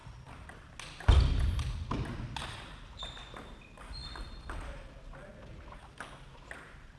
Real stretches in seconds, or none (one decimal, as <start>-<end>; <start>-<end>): 0.0-7.0